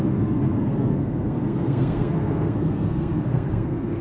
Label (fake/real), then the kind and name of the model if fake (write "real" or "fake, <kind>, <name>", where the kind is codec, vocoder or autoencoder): fake, codec, SNAC